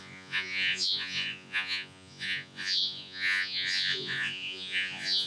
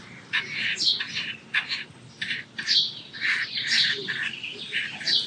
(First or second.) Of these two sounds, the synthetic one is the first